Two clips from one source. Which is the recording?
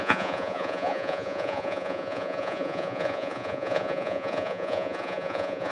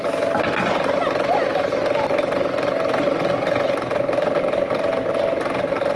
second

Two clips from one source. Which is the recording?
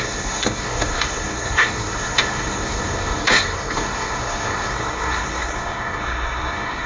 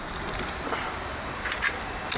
second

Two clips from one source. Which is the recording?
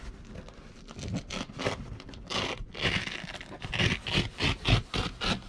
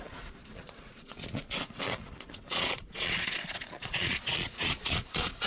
first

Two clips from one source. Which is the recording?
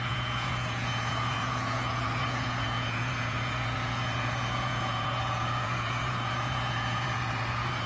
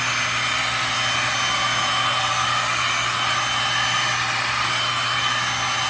second